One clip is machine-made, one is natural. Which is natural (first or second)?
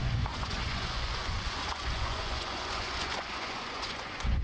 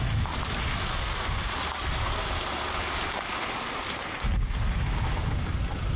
second